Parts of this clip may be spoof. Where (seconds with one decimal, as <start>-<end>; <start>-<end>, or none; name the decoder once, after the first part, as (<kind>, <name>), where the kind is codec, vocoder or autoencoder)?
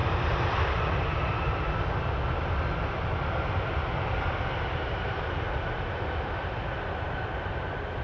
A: none